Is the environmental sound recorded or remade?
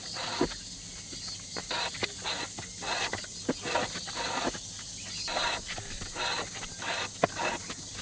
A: recorded